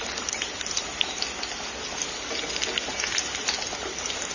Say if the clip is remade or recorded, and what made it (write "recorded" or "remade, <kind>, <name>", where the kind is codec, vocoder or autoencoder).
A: recorded